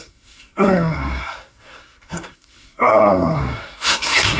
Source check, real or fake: fake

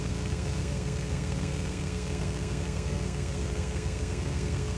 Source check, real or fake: fake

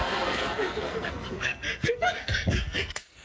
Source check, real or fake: fake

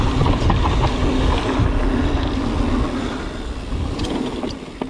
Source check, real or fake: real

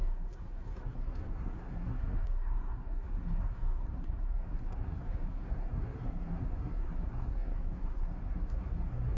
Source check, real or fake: fake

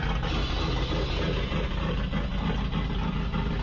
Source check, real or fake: real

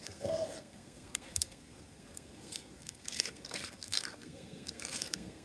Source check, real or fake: fake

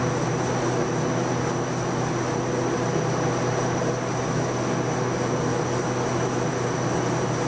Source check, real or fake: real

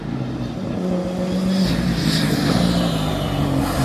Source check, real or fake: real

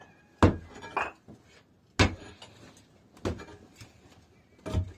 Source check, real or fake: real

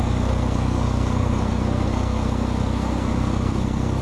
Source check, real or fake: fake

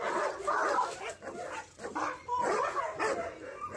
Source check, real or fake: real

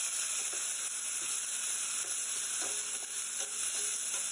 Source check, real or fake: real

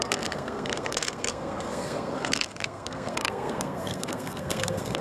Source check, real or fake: fake